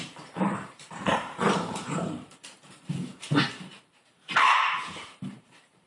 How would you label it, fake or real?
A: fake